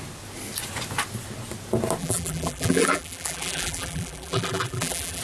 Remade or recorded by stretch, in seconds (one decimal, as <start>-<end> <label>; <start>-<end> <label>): 0.0-2.0 recorded; 2.0-5.2 remade